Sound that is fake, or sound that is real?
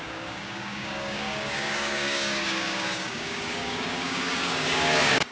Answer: fake